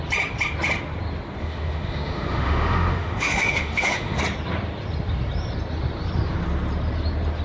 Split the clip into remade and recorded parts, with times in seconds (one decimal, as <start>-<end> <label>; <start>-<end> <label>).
0.0-1.4 recorded; 1.4-4.2 remade; 4.2-7.4 recorded